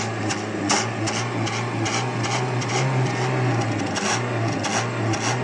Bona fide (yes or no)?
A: yes